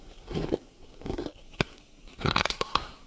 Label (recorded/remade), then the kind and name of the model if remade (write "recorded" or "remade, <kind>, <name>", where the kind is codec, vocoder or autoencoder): remade, codec, SNAC